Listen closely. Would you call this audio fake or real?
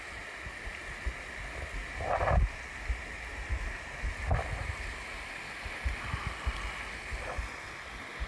real